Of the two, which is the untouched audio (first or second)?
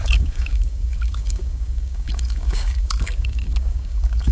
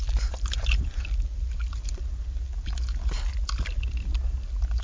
second